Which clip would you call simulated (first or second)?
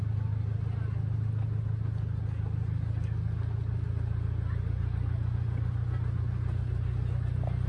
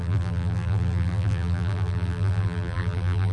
second